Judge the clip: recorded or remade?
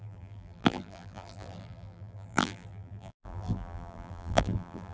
remade